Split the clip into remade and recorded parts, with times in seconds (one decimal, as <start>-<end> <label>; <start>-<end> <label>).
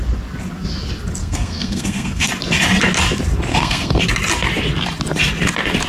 0.0-1.2 recorded; 1.2-2.3 remade; 2.3-3.5 recorded; 3.5-4.0 remade; 4.0-5.9 recorded